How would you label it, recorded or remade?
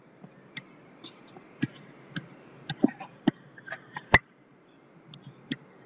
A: remade